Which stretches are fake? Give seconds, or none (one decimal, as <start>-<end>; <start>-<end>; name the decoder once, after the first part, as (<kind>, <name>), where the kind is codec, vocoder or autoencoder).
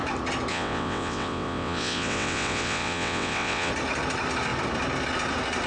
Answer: 0.5-3.7 (vocoder, WaveNeXt)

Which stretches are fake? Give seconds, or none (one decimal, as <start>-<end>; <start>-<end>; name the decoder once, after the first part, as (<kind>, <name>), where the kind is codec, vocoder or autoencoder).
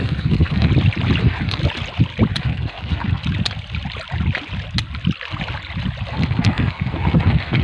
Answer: 0.0-0.7 (codec, SNAC); 1.2-1.6; 2.4-3.2; 6.1-7.6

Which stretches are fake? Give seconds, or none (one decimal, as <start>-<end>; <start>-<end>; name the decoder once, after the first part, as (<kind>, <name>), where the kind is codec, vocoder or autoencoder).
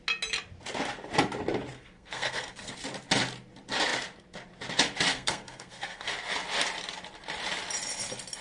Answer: 1.7-2.7 (codec, SNAC); 5.1-6.1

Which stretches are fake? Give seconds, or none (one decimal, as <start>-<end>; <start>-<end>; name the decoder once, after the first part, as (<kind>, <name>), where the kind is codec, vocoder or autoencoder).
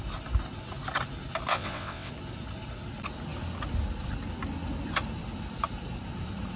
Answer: 1.5-2.1 (vocoder, WaveNeXt)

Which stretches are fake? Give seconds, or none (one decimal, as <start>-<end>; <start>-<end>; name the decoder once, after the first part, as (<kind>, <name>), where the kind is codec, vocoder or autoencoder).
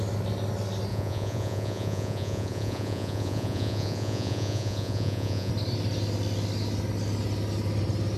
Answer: 0.9-5.5 (vocoder, Vocos)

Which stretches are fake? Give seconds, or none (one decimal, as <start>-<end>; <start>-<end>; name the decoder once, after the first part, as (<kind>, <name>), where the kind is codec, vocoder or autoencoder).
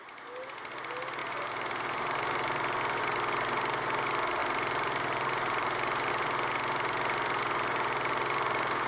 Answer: 1.2-3.0 (vocoder, BigVGAN v2); 4.4-6.1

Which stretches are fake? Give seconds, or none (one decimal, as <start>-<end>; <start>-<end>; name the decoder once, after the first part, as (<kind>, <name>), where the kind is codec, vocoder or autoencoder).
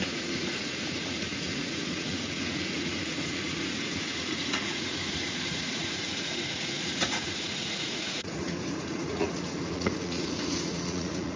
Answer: 0.0-11.4 (vocoder, Vocos)